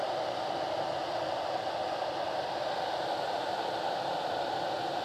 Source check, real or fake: real